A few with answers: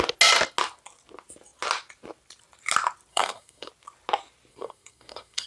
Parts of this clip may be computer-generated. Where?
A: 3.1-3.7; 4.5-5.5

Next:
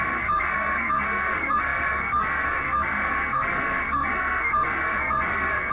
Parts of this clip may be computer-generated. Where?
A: 0.0-5.7

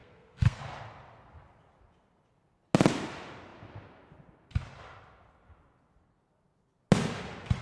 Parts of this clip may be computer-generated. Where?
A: 0.0-0.6

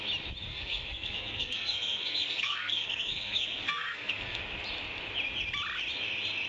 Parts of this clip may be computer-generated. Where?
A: 0.5-4.4

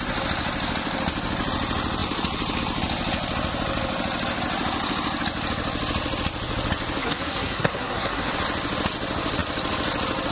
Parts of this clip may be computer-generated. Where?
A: 7.0-8.3

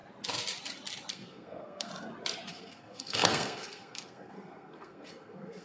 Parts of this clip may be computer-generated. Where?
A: 1.1-1.9; 2.5-5.6

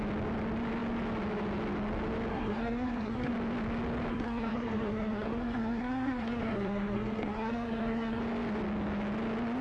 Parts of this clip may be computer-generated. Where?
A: 2.3-3.3; 4.1-8.2

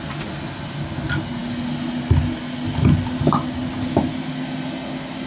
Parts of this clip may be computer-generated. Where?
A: none